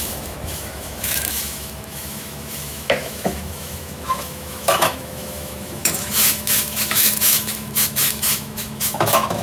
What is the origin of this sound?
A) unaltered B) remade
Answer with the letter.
B